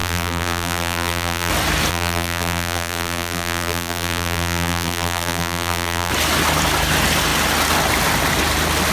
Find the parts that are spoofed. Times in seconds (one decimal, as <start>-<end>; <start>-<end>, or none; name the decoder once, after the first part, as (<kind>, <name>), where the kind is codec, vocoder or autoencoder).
0.0-1.5 (vocoder, BigVGAN v2); 1.9-6.1